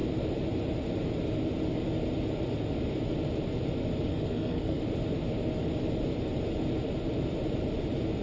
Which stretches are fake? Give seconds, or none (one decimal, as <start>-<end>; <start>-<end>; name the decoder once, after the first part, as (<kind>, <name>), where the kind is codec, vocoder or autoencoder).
4.1-4.8 (codec, SNAC)